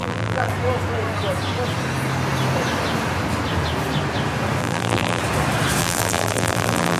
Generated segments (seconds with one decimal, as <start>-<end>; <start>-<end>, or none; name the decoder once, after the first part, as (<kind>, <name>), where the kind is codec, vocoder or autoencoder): 0.0-0.5 (vocoder, BigVGAN v2); 4.6-5.2; 5.8-7.0